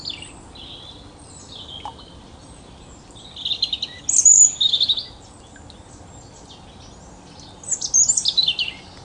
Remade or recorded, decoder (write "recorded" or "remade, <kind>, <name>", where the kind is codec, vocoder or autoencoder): recorded